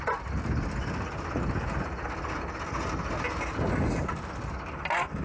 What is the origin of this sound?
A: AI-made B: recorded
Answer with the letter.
B